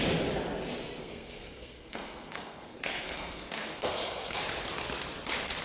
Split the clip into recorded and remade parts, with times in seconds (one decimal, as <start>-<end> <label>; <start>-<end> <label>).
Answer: 0.0-1.0 recorded; 1.0-4.4 remade; 4.4-5.6 recorded